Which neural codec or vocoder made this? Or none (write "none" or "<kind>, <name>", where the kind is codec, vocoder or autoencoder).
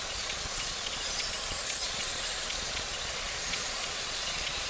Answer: vocoder, Vocos